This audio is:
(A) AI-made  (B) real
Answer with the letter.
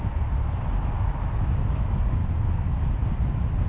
B